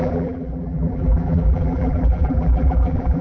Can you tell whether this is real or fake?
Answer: fake